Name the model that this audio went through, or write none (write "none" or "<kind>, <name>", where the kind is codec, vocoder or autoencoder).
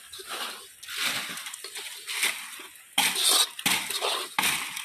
none